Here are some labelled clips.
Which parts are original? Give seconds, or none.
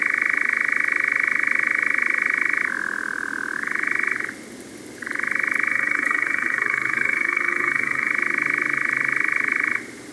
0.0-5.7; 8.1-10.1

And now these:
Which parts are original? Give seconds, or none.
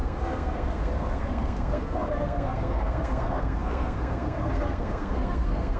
none